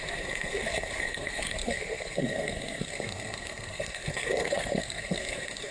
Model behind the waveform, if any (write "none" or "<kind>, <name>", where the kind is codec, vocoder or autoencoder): codec, SNAC